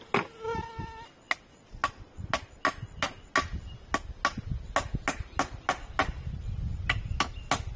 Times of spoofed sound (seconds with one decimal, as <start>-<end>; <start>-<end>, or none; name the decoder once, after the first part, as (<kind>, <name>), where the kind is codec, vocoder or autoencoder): none